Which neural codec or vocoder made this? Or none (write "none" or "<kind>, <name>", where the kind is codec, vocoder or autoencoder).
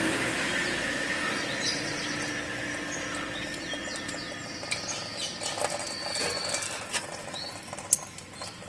none